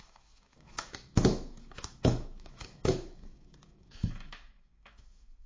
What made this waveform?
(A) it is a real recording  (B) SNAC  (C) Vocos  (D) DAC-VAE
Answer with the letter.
D